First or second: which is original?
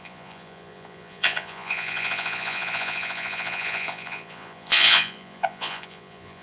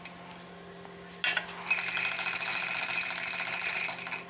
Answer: second